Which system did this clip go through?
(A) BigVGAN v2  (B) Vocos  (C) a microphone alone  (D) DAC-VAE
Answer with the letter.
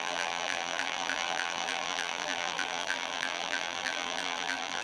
A